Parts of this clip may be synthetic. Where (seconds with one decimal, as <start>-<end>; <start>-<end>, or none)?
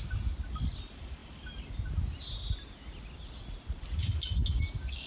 none